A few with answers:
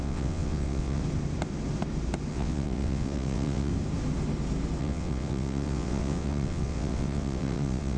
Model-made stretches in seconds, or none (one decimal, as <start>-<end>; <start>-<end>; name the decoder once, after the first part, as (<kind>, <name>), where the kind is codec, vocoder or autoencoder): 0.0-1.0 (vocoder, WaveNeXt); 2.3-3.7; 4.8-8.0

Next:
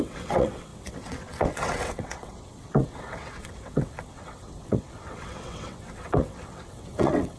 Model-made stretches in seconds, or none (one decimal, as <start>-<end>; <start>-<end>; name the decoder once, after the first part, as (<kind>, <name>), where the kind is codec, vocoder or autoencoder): 0.0-7.4 (vocoder, WaveNeXt)

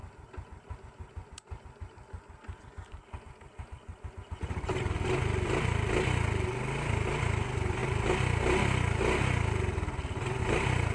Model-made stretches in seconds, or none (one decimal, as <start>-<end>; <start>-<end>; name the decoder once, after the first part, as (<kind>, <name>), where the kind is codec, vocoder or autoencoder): none

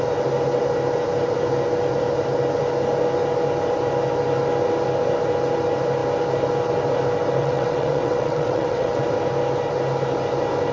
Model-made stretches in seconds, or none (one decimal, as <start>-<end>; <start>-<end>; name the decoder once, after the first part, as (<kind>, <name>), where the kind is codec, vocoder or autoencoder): 7.4-9.0 (vocoder, WaveNeXt)

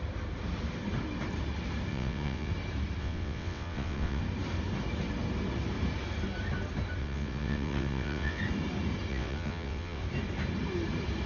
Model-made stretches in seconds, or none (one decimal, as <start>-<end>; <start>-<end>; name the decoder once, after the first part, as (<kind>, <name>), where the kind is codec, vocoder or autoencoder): 1.9-2.5 (vocoder, WaveNeXt); 3.0-4.2; 7.0-8.4; 9.1-10.0

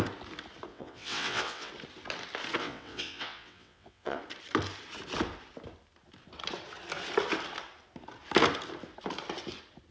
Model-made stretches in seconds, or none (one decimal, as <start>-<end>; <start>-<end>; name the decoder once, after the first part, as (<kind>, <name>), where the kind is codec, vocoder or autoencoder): 0.7-1.7 (vocoder, WaveNeXt); 2.6-4.2